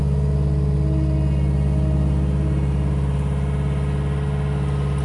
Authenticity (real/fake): real